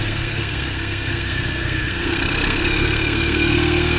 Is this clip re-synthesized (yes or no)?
yes